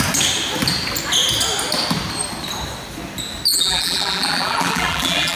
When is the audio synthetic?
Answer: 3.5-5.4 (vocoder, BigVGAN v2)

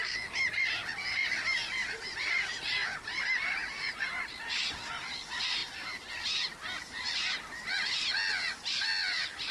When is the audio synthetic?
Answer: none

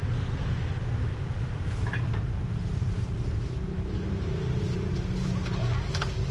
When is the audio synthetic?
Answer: 1.1-4.9 (vocoder, BigVGAN v2)

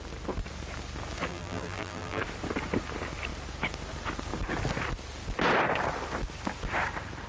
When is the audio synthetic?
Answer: 1.3-2.2 (vocoder, BigVGAN v2)